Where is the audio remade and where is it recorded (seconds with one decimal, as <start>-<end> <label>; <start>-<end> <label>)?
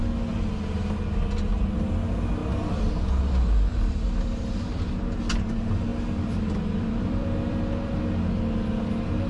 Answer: 0.0-3.7 recorded; 3.7-4.9 remade; 4.9-5.9 recorded; 5.9-8.0 remade; 8.0-9.3 recorded